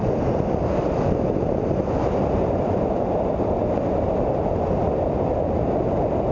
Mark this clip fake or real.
real